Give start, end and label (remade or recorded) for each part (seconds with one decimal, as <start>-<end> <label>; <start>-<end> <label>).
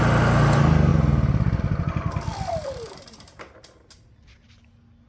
0.0-2.6 recorded; 2.6-3.3 remade; 3.3-5.1 recorded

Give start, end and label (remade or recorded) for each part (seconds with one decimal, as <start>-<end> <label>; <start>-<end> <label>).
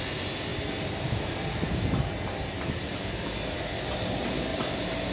0.0-0.5 recorded; 0.5-1.8 remade; 1.8-4.5 recorded; 4.5-5.1 remade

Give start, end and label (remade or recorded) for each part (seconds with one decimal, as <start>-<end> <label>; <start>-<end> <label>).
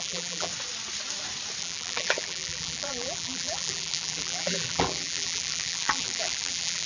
0.0-0.5 remade; 0.5-1.6 recorded; 1.6-6.9 remade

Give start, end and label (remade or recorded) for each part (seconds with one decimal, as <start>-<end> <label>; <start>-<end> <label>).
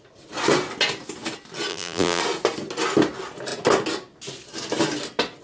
0.0-1.7 recorded; 1.7-2.2 remade; 2.2-5.4 recorded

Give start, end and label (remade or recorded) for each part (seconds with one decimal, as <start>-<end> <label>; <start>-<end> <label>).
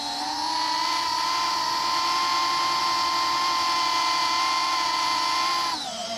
0.0-4.6 recorded; 4.6-6.2 remade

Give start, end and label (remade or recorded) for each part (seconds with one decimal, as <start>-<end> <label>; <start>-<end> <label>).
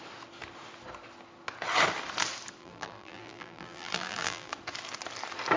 0.0-2.6 recorded; 2.6-4.5 remade; 4.5-5.6 recorded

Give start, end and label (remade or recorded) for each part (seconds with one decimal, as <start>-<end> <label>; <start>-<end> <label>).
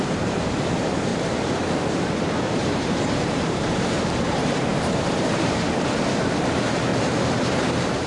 0.0-1.1 remade; 1.1-1.9 recorded; 1.9-8.1 remade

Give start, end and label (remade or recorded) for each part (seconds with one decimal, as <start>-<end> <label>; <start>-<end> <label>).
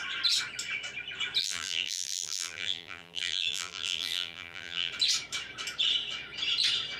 0.0-1.4 recorded; 1.4-4.9 remade; 4.9-7.0 recorded